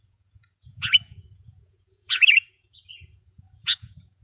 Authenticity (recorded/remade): remade